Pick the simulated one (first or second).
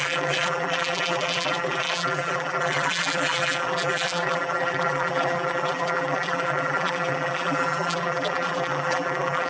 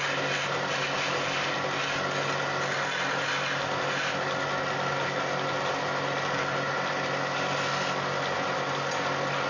first